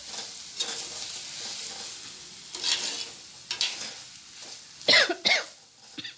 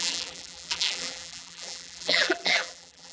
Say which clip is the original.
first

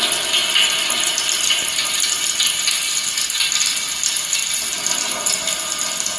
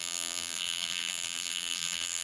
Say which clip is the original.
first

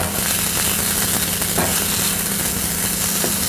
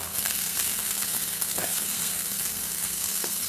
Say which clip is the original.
first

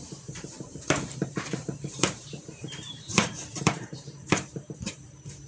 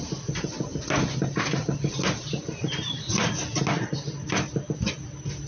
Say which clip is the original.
second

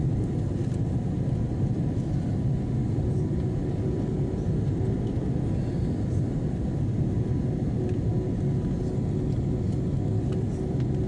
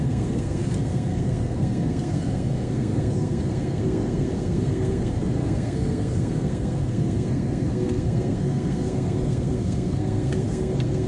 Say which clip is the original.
first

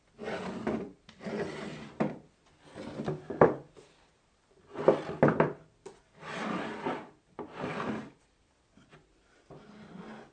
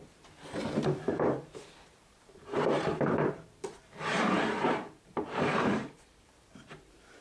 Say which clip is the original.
first